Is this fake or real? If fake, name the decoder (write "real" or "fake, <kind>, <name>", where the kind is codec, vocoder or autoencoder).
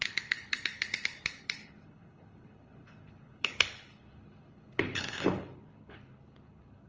fake, codec, HILCodec